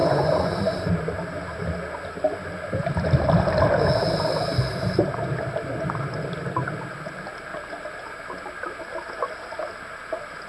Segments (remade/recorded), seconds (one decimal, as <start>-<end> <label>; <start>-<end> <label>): 0.0-0.9 remade; 0.9-10.5 recorded